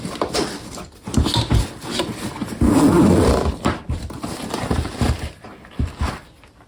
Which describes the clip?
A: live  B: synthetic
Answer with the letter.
A